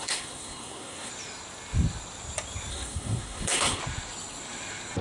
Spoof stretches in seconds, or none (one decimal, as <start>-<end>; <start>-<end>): 0.0-1.1; 2.7-3.8